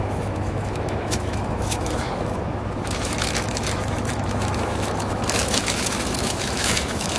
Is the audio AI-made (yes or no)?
yes